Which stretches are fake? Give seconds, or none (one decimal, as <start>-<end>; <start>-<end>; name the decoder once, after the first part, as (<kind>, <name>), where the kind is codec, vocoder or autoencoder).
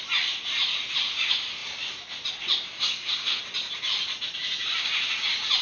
2.8-3.4 (codec, SNAC)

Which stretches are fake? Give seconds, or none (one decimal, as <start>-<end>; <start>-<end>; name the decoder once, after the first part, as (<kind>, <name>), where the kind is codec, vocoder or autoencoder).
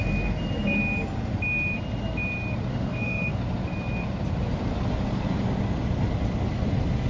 2.7-3.4 (autoencoder, DAC-VAE)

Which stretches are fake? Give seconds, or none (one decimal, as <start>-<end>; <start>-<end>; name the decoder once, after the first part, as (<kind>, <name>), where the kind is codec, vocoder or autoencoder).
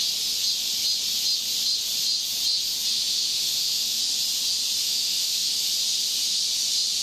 2.9-4.0 (autoencoder, DAC-VAE); 4.8-5.5